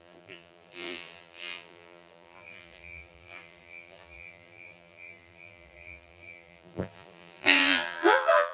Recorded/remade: remade